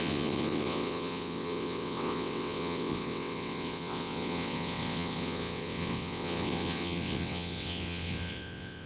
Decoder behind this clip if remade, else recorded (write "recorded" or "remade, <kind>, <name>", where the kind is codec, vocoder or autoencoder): remade, vocoder, WaveNeXt